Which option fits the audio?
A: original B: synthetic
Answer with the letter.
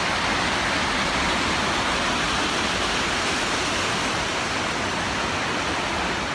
A